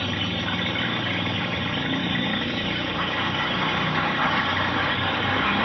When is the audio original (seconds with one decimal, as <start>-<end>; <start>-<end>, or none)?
0.0-0.9; 1.6-2.0